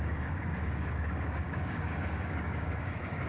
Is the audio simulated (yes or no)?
yes